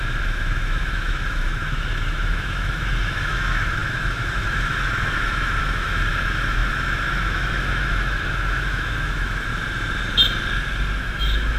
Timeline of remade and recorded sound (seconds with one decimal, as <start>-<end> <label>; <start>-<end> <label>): 0.0-9.5 remade; 9.5-11.0 recorded; 11.0-11.6 remade